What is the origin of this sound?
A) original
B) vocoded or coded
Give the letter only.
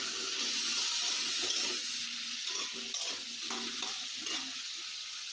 A